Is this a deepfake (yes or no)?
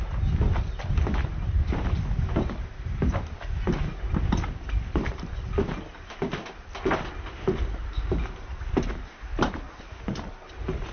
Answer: no